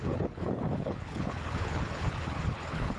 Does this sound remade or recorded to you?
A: remade